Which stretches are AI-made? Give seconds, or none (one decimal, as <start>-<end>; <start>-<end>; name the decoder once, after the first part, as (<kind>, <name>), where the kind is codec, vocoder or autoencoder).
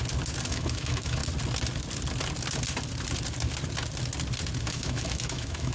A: 0.5-1.2 (autoencoder, DAC-VAE); 4.6-5.7